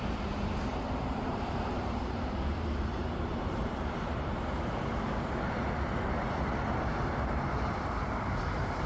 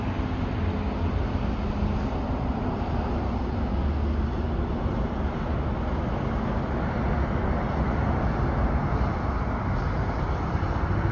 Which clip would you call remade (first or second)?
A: first